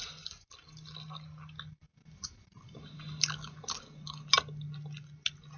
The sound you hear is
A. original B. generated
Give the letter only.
A